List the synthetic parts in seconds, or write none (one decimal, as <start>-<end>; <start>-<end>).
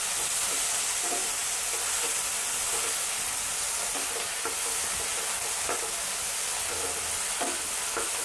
none